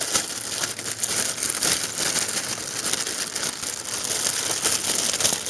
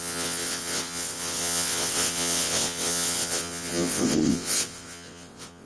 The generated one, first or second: second